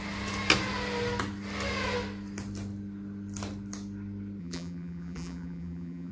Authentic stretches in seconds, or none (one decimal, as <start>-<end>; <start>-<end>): 0.0-4.4